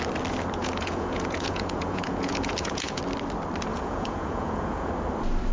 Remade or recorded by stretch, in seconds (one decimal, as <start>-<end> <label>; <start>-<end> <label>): 0.0-0.6 recorded; 0.6-3.0 remade; 3.0-3.7 recorded; 3.7-4.9 remade; 4.9-5.5 recorded